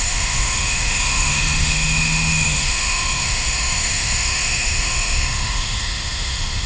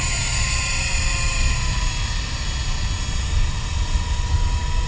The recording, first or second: second